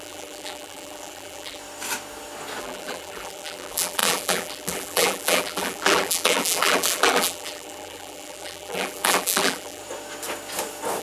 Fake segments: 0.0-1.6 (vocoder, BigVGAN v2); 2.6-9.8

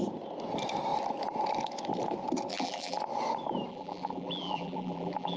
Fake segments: 2.5-3.0 (vocoder, BigVGAN v2); 3.7-5.4

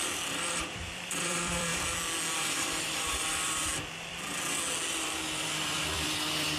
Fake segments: 0.0-1.7 (vocoder, BigVGAN v2); 2.5-3.7; 4.9-6.6

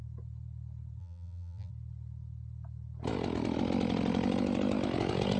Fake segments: 1.0-1.7 (vocoder, BigVGAN v2)

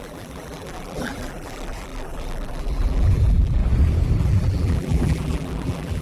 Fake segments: 0.0-3.6 (vocoder, BigVGAN v2); 4.2-6.0

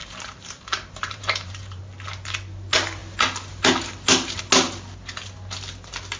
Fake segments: 0.0-1.8 (vocoder, BigVGAN v2)